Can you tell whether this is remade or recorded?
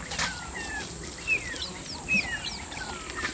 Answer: recorded